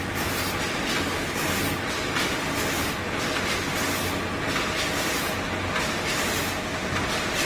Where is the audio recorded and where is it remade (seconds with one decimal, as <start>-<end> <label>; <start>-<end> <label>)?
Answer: 0.0-6.4 recorded; 6.4-7.0 remade; 7.0-7.5 recorded